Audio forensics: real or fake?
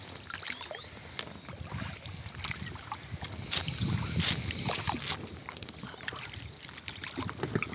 real